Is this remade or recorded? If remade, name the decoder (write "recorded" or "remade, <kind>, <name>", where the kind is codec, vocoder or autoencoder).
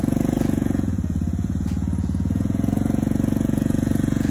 remade, vocoder, Vocos